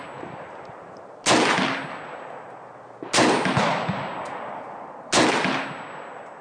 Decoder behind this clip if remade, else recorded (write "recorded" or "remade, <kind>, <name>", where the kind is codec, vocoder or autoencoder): recorded